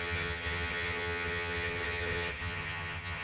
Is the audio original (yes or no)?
no